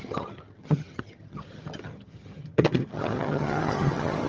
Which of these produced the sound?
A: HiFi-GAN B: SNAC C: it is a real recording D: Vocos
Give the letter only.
A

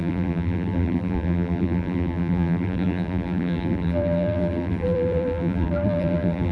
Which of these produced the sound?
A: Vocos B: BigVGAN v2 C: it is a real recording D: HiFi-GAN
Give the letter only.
B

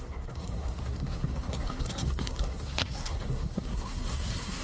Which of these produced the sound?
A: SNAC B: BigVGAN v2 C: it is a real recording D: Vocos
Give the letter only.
A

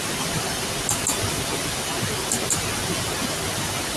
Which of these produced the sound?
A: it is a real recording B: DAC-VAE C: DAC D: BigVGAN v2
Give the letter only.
A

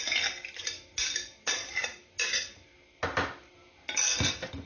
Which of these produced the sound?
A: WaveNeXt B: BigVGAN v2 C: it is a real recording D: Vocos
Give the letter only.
C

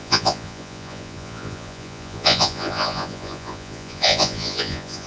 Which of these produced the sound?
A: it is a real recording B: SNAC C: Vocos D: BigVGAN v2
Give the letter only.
C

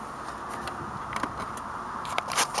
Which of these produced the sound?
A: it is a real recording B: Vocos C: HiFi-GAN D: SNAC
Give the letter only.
A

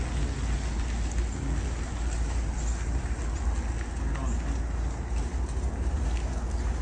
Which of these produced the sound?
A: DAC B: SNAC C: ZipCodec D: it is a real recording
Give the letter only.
D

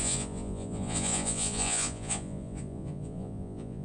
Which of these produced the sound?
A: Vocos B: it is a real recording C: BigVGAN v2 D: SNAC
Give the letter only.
A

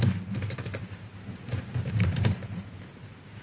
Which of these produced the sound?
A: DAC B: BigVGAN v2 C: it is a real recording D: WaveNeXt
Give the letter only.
B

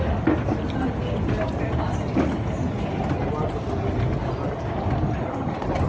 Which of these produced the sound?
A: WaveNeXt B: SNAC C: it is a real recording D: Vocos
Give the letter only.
C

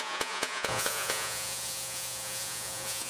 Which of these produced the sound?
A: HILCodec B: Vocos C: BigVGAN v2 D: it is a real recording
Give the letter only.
B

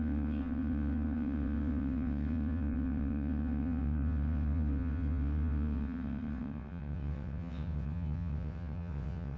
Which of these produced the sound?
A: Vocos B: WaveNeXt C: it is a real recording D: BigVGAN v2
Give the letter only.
B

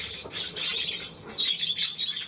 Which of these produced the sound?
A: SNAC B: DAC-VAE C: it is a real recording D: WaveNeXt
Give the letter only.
C